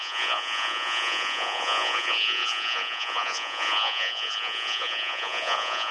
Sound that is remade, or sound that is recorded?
remade